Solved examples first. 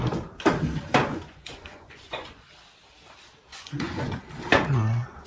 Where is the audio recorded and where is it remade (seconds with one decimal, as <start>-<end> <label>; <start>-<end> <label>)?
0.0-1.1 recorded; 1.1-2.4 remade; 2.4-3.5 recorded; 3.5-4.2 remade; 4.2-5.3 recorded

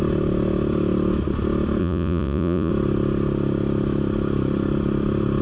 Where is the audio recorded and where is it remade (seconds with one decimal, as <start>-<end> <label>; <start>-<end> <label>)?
0.0-1.8 recorded; 1.8-2.7 remade; 2.7-5.4 recorded

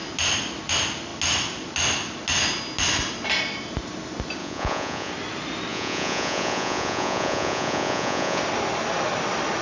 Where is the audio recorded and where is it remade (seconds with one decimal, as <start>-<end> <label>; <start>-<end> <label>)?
0.0-4.4 recorded; 4.4-5.1 remade; 5.1-5.7 recorded; 5.7-8.4 remade; 8.4-9.6 recorded